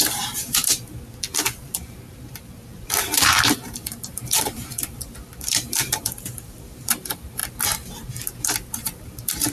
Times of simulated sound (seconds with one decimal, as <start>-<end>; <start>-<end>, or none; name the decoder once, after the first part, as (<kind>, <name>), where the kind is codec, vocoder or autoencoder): 0.0-0.6 (vocoder, BigVGAN v2); 1.6-7.4; 8.8-9.5